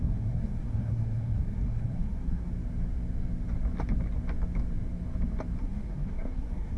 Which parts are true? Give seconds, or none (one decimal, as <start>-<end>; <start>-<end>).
2.5-5.6

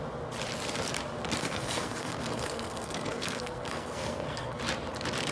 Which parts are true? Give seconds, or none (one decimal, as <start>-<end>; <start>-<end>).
0.0-1.4; 4.6-5.3

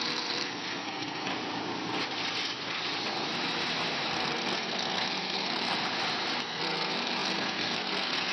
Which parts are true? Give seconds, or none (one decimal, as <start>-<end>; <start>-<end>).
1.3-4.1; 5.8-6.4

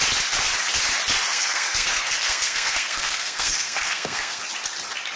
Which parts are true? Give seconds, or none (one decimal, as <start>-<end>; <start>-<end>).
0.0-1.3; 4.4-5.2